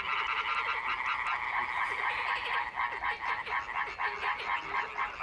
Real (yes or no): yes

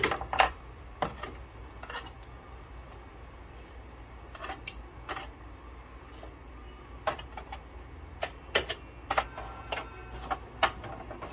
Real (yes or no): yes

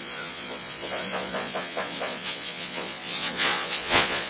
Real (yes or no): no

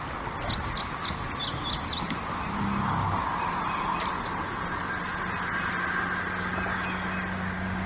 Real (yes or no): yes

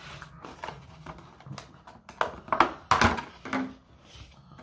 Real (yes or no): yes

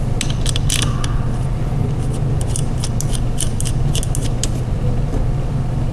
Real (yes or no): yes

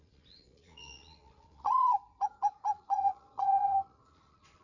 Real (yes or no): no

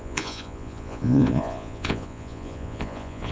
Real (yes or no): no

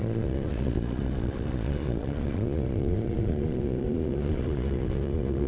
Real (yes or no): no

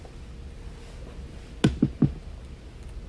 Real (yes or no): yes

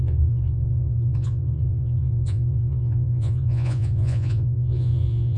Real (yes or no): no